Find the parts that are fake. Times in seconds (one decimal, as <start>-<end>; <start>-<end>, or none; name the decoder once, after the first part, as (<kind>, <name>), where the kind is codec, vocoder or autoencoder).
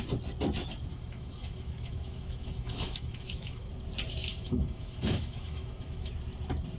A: 0.9-3.7 (autoencoder, DAC-VAE); 4.3-6.1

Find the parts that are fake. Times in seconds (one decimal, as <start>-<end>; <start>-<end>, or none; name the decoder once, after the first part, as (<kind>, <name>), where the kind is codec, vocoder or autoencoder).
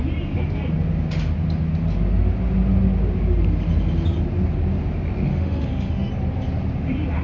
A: 5.3-6.1 (autoencoder, DAC-VAE)